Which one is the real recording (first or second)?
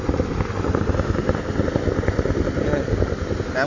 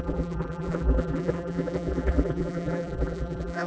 first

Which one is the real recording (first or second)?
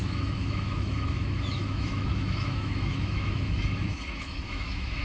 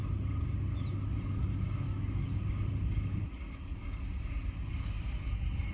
second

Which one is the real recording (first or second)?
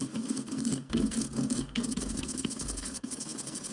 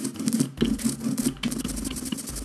second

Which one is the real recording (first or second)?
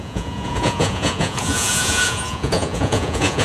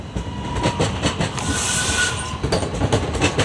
second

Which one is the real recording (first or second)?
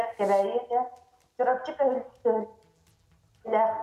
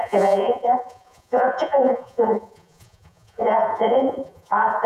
first